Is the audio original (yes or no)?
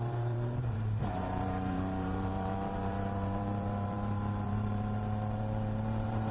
no